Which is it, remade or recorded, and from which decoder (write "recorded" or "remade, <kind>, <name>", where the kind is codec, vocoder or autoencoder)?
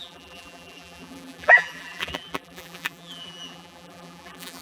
remade, vocoder, BigVGAN v2